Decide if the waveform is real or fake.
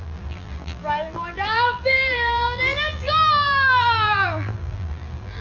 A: fake